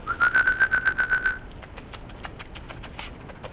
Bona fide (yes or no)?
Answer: yes